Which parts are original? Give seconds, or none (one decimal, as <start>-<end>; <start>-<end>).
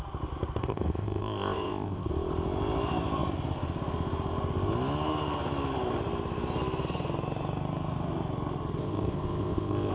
0.0-0.6; 2.1-8.8